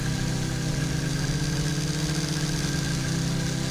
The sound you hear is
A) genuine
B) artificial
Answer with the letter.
A